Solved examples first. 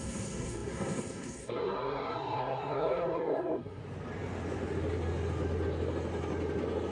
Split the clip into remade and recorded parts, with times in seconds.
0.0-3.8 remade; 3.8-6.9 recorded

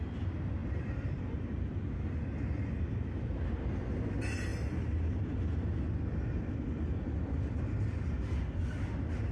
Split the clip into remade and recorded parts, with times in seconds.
0.0-0.6 recorded; 0.6-1.8 remade; 1.8-4.5 recorded; 4.5-7.6 remade; 7.6-9.3 recorded

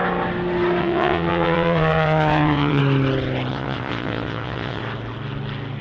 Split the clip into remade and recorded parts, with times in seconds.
0.0-0.8 recorded; 0.8-2.8 remade; 2.8-3.5 recorded; 3.5-4.8 remade; 4.8-5.8 recorded

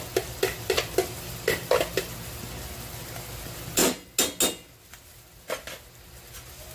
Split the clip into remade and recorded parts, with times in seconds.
0.0-6.7 recorded

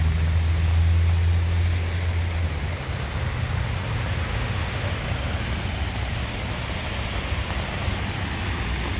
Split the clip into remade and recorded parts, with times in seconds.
0.0-4.3 recorded; 4.3-4.9 remade; 4.9-9.0 recorded

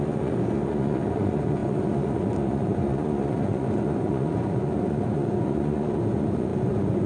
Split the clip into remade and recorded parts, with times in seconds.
0.0-7.1 remade

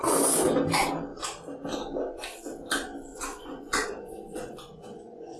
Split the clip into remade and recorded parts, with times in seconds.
0.0-3.1 recorded; 3.1-5.4 remade

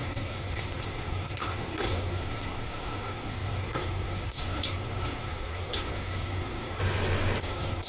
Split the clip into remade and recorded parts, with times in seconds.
0.0-6.8 remade; 6.8-7.4 recorded; 7.4-7.9 remade